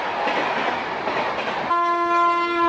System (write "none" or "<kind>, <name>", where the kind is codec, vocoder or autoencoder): none